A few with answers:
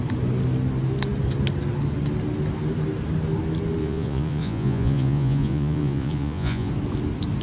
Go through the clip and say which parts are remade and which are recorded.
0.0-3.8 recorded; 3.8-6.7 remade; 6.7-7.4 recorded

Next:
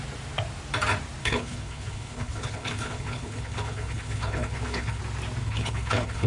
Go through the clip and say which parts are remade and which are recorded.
0.0-1.2 recorded; 1.2-5.0 remade; 5.0-5.4 recorded; 5.4-6.3 remade

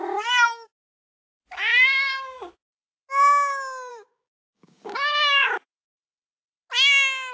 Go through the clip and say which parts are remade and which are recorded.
0.0-1.7 recorded; 1.7-2.5 remade; 2.5-3.9 recorded; 3.9-5.5 remade; 5.5-7.3 recorded

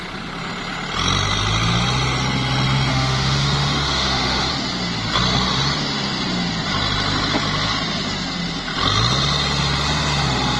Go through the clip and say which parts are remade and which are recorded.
0.0-2.9 recorded; 2.9-4.5 remade; 4.5-10.6 recorded

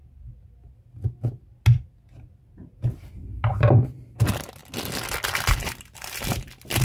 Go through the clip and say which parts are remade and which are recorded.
0.0-3.0 recorded; 3.0-4.6 remade; 4.6-5.2 recorded; 5.2-6.8 remade